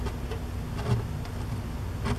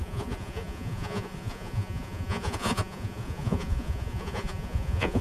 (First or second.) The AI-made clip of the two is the second